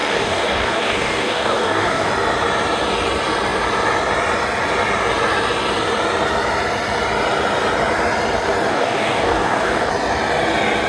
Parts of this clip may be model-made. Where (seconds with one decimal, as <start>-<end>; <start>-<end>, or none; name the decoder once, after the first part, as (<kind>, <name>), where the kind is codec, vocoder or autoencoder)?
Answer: 0.0-2.1 (codec, DAC); 8.7-9.9